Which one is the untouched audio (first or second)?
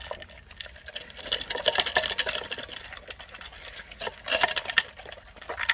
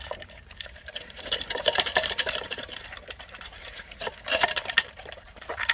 first